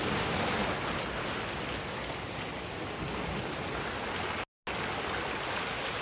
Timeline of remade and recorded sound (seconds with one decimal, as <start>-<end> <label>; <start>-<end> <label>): 0.0-6.0 recorded